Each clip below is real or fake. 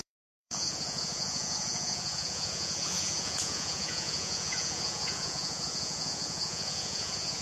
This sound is fake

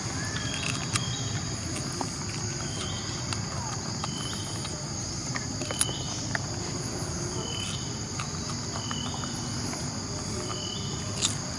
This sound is real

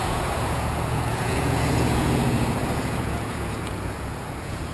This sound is fake